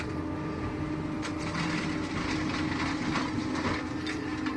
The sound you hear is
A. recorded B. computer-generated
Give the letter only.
A